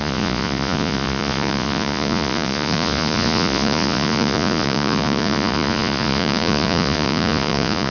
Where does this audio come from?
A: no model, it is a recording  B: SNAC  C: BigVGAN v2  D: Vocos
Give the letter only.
D